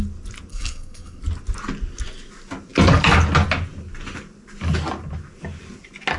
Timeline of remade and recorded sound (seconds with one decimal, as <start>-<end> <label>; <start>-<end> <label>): 0.0-0.5 recorded; 0.5-1.2 remade; 1.2-6.2 recorded